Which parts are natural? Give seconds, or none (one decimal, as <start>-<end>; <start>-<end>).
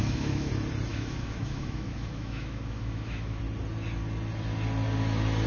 0.5-0.9; 3.4-5.5